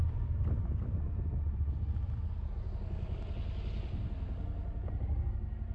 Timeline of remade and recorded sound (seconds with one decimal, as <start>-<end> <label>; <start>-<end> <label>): 0.0-5.7 recorded